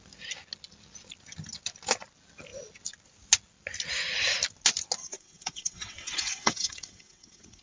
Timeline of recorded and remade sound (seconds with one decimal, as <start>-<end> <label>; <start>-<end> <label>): 0.0-5.0 recorded; 5.0-7.6 remade